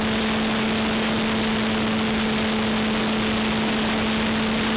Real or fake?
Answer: real